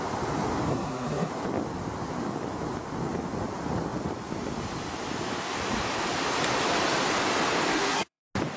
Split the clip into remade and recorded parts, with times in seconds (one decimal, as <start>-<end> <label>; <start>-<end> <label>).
0.0-0.7 recorded; 0.7-1.3 remade; 1.3-7.7 recorded; 7.7-8.2 remade; 8.2-8.6 recorded